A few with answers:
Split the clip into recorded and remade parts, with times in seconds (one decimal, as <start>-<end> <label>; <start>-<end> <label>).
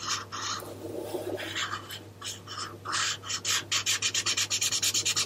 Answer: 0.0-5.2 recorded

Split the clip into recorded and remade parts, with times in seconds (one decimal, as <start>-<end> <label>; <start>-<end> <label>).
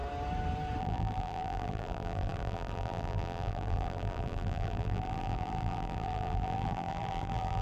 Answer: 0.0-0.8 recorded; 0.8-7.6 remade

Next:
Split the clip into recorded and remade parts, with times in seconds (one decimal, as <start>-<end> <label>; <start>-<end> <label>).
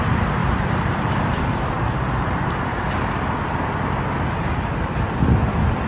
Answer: 0.0-0.4 recorded; 0.4-2.8 remade; 2.8-5.9 recorded